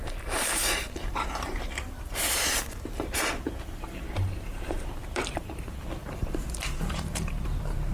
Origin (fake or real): fake